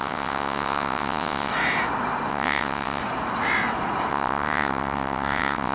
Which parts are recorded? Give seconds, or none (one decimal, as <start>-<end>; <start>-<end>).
1.5-2.3; 3.0-4.1